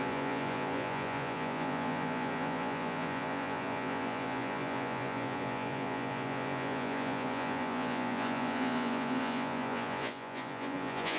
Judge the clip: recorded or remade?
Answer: remade